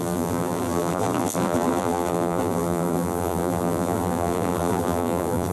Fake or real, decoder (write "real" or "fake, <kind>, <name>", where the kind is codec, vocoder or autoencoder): fake, vocoder, BigVGAN v2